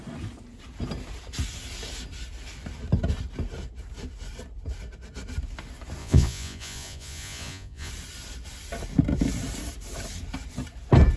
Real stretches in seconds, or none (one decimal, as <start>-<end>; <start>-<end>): 0.0-6.0; 7.9-11.2